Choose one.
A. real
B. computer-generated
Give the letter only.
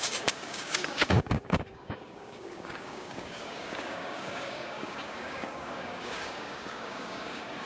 B